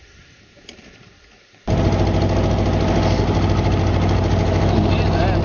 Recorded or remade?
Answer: recorded